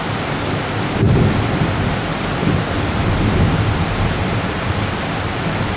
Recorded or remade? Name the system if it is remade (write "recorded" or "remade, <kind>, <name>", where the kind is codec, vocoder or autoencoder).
remade, vocoder, BigVGAN v2